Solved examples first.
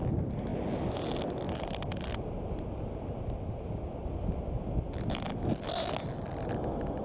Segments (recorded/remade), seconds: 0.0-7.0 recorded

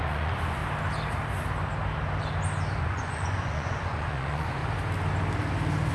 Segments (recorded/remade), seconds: 0.0-0.6 remade; 0.6-2.8 recorded; 2.8-4.6 remade; 4.6-5.9 recorded

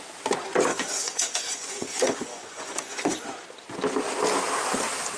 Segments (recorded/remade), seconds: 0.0-0.7 recorded; 0.7-3.2 remade; 3.2-5.2 recorded

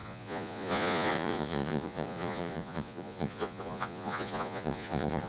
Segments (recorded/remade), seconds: 0.0-5.3 remade